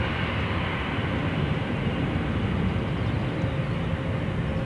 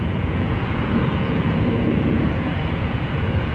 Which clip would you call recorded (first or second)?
first